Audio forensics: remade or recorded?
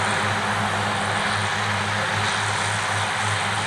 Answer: recorded